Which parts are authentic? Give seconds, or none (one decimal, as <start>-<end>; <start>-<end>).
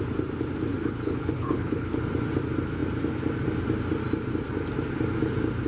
0.0-0.7; 2.0-5.7